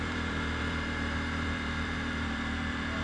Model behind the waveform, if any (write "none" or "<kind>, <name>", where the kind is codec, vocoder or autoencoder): vocoder, BigVGAN v2